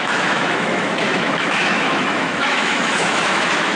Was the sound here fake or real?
fake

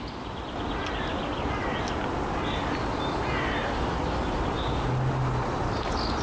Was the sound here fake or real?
real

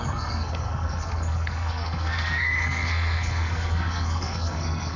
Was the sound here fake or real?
fake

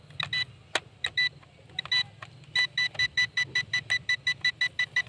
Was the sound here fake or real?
real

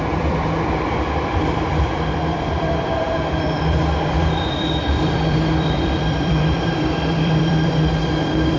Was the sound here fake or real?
fake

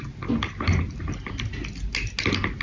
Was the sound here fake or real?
real